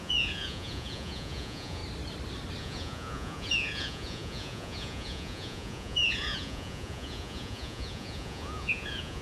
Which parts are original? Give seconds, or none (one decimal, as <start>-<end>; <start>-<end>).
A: 1.8-2.6